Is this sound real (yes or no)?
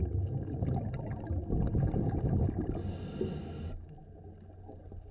yes